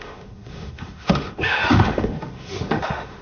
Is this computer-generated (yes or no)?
yes